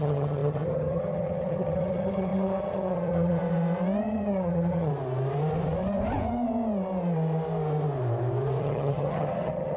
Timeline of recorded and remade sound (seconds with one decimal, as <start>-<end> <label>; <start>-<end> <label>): 0.0-3.4 remade; 3.4-4.0 recorded; 4.0-4.9 remade; 4.9-8.6 recorded; 8.6-9.8 remade